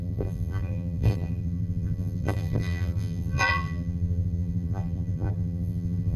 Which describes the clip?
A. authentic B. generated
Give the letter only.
B